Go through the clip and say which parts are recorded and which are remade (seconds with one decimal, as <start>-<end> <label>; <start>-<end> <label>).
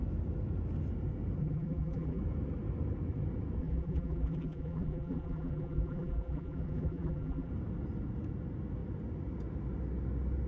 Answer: 0.0-1.4 recorded; 1.4-2.2 remade; 2.2-3.6 recorded; 3.6-7.5 remade; 7.5-10.5 recorded